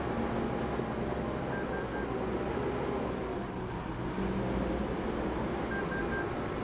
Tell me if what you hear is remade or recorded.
recorded